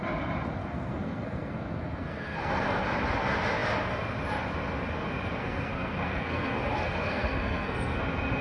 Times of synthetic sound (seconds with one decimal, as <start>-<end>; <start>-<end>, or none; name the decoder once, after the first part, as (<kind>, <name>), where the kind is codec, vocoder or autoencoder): 0.6-2.8 (codec, SNAC); 5.4-8.0